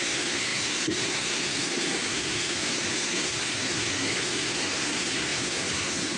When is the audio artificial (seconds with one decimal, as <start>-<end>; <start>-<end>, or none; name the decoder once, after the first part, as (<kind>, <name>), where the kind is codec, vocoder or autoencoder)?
0.0-6.2 (codec, SNAC)